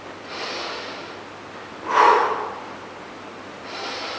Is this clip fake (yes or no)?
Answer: no